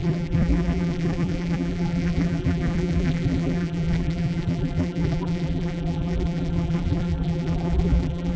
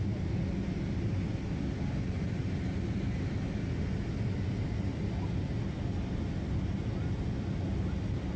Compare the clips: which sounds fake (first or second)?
first